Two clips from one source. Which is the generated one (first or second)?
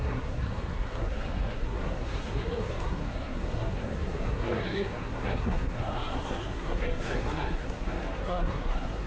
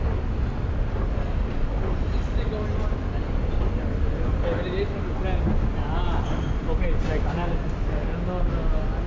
first